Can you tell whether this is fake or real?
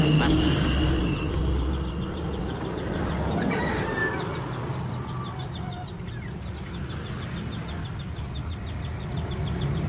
real